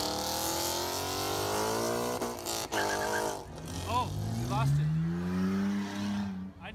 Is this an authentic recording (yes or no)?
yes